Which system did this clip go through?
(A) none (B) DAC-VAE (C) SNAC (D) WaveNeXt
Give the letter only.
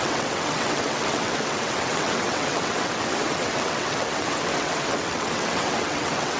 D